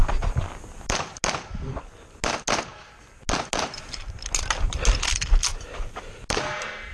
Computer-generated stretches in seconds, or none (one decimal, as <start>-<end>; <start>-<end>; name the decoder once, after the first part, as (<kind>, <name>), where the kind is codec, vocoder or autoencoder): none